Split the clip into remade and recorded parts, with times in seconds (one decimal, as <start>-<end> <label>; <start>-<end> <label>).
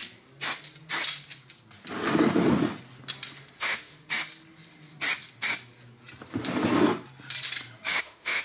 0.0-3.6 recorded; 3.6-4.0 remade; 4.0-8.0 recorded; 8.0-8.4 remade